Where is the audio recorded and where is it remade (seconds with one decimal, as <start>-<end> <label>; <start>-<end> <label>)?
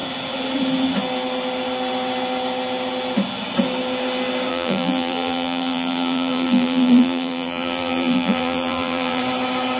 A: 0.0-4.5 recorded; 4.5-9.2 remade; 9.2-9.8 recorded